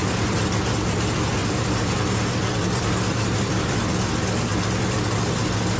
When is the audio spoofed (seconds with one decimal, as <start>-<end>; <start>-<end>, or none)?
0.0-0.8; 1.4-4.1; 4.5-5.0